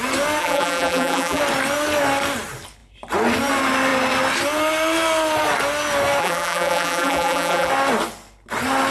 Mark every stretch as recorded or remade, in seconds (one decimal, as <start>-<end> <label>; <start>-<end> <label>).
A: 0.0-0.4 recorded; 0.4-1.4 remade; 1.4-6.2 recorded; 6.2-7.7 remade; 7.7-8.9 recorded